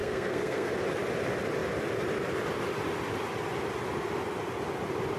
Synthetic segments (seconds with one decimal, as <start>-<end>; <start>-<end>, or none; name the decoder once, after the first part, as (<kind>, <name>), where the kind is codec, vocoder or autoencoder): 0.0-0.7 (codec, SNAC)